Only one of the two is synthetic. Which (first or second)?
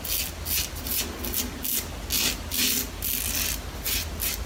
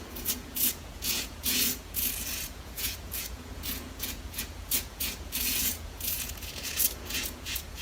second